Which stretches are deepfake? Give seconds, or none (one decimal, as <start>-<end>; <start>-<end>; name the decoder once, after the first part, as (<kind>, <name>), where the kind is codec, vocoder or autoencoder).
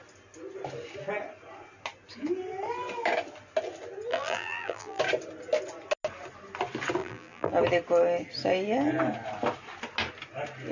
4.1-5.0 (vocoder, BigVGAN v2); 7.0-7.5